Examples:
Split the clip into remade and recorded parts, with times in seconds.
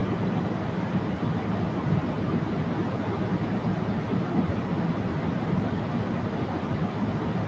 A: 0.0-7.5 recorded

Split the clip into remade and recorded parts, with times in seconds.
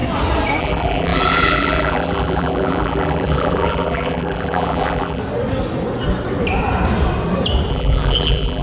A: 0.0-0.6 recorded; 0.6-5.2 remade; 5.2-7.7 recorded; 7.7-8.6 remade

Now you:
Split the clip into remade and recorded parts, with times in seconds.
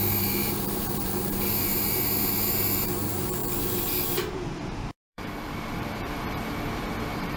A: 0.0-3.4 remade; 3.4-4.3 recorded; 4.3-7.4 remade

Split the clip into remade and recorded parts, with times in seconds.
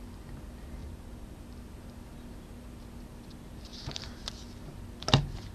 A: 0.0-0.8 recorded; 0.8-1.3 remade; 1.3-3.7 recorded; 3.7-4.3 remade; 4.3-5.5 recorded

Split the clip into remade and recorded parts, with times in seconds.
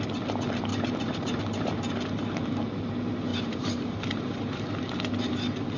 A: 0.0-0.7 recorded; 0.7-1.4 remade; 1.4-3.3 recorded; 3.3-4.8 remade; 4.8-5.8 recorded